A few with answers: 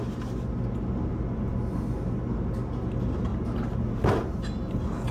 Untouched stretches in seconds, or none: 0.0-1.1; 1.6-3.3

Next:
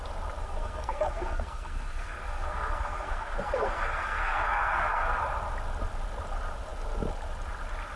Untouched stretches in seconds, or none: 0.0-0.4; 5.2-8.0

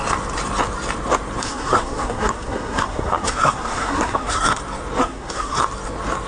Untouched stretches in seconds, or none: 0.0-1.4; 4.6-5.0; 5.6-6.3

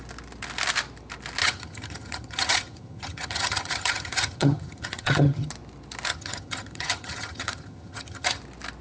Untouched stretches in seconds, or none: 0.0-1.4; 5.5-6.1; 8.4-8.8

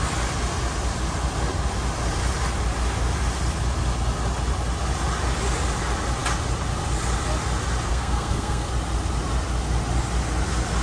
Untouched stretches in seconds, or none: 0.0-7.9; 8.7-10.8

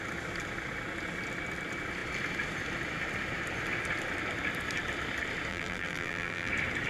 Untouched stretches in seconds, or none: 0.0-5.5; 6.5-6.9

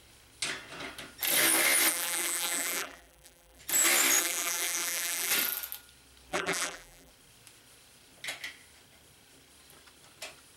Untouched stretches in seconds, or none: 0.0-1.9; 3.6-4.2; 5.3-6.3; 7.1-10.6

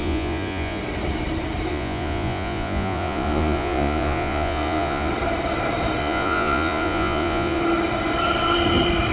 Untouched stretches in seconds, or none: 0.8-1.7; 5.1-6.0; 7.6-9.1